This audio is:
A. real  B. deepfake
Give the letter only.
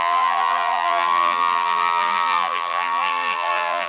B